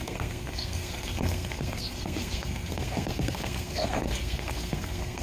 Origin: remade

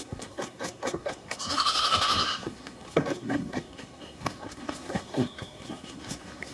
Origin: remade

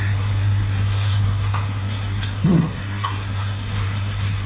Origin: remade